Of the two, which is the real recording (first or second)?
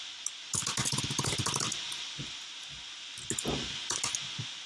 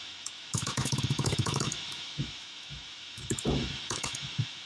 first